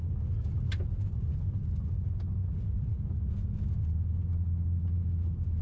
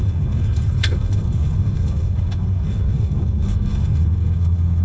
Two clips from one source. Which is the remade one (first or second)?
second